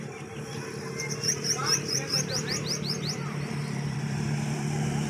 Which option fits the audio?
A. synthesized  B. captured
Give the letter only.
A